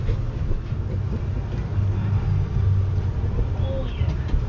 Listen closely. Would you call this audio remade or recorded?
recorded